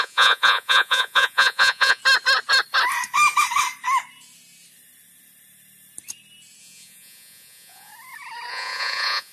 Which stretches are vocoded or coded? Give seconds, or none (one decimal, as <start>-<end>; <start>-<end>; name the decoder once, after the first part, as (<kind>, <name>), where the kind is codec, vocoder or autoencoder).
0.0-2.0 (vocoder, Vocos); 6.6-7.9; 8.5-9.3